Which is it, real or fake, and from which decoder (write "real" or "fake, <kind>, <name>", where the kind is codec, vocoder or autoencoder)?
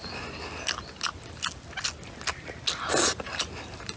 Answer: real